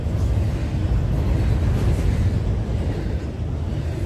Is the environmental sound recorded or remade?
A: recorded